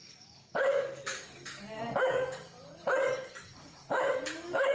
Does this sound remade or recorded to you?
remade